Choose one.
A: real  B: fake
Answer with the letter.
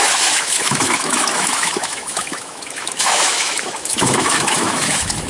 B